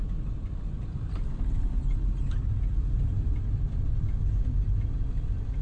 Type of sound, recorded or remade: recorded